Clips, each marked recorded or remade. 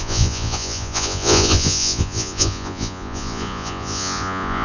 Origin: remade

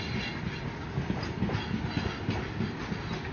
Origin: recorded